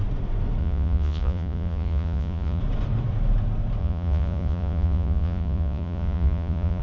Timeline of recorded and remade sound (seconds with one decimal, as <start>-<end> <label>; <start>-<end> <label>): 0.0-0.6 recorded; 0.6-2.6 remade; 2.6-3.8 recorded; 3.8-6.8 remade